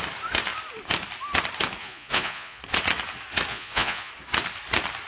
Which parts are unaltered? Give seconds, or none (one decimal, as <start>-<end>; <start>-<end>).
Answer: 0.0-1.8; 2.6-3.5; 4.1-5.1